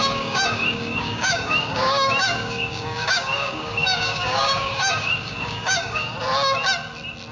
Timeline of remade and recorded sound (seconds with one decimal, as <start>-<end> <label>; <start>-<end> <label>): 0.0-6.1 remade; 6.1-7.3 recorded